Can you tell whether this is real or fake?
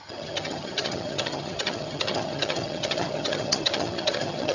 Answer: fake